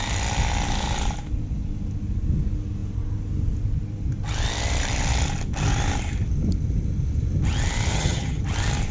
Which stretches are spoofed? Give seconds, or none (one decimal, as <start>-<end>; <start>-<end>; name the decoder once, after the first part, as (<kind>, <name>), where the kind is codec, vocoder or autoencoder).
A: 7.9-8.4 (vocoder, HiFi-GAN)